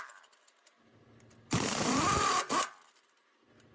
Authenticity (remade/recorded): recorded